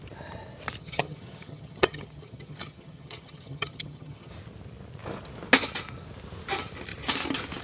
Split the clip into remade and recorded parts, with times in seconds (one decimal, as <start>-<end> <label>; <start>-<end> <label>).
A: 0.0-0.8 recorded; 0.8-4.3 remade; 4.3-7.6 recorded